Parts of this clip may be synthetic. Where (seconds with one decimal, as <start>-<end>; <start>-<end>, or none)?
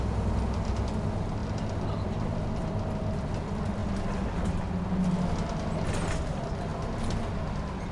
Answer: 1.4-2.4